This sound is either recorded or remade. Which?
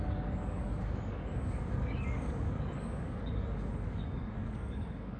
remade